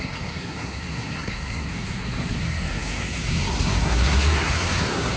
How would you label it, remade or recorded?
remade